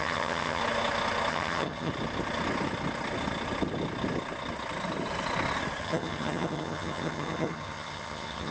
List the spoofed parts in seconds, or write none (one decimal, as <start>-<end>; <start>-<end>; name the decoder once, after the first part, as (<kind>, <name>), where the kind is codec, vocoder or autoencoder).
0.0-0.6 (vocoder, HiFi-GAN); 1.3-1.9; 5.8-8.5